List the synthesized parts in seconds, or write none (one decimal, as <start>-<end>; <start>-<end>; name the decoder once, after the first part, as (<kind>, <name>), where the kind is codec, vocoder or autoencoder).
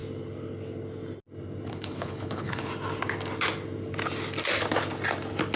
1.7-2.7 (codec, HILCodec)